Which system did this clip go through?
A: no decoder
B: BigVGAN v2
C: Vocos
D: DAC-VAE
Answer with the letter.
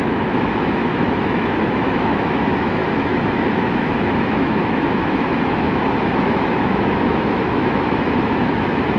D